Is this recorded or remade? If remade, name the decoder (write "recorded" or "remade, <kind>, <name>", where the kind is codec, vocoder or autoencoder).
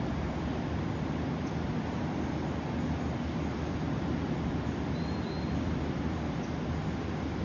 recorded